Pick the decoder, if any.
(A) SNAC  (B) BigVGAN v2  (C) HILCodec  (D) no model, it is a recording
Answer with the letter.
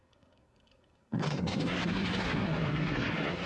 A